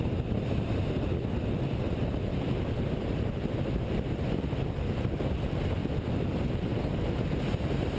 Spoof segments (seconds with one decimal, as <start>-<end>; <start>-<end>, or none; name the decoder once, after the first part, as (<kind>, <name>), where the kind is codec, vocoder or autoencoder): 2.3-3.3 (vocoder, BigVGAN v2)